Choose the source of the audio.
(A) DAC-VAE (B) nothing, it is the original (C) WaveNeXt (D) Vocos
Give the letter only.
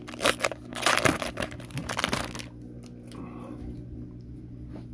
B